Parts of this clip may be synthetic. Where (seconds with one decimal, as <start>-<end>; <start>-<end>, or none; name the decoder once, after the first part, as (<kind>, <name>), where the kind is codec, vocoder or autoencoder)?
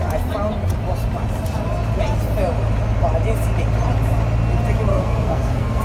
4.9-5.8 (codec, SNAC)